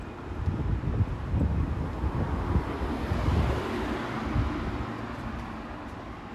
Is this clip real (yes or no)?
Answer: yes